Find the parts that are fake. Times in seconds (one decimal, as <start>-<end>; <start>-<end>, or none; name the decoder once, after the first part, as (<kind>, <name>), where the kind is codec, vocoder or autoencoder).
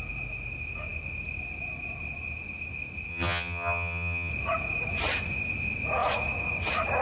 3.1-4.3 (vocoder, HiFi-GAN)